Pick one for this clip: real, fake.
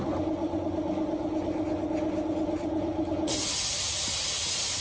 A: real